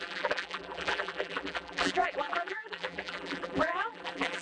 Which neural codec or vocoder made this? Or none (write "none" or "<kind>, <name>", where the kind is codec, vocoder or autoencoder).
vocoder, BigVGAN v2